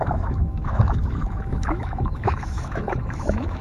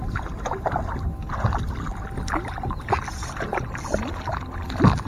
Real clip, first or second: second